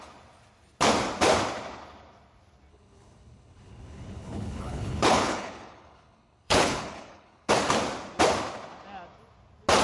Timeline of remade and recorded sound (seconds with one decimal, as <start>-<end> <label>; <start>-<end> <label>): 0.0-2.7 recorded; 2.7-7.5 remade; 7.5-9.8 recorded